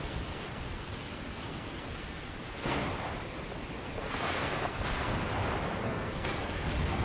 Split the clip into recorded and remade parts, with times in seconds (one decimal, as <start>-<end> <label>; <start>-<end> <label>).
0.0-2.8 remade; 2.8-3.8 recorded; 3.8-5.3 remade; 5.3-5.8 recorded; 5.8-7.0 remade